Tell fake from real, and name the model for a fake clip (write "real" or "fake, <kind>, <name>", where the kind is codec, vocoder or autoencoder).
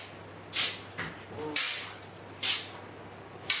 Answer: real